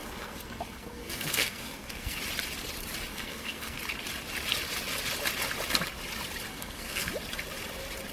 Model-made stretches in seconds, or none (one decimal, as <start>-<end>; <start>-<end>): 0.0-2.2; 3.1-3.8; 6.5-7.1